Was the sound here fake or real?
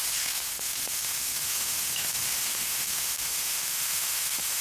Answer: fake